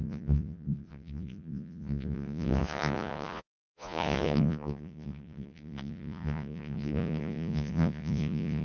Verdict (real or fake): fake